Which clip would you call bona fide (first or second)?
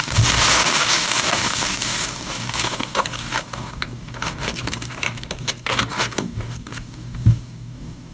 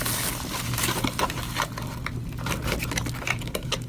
second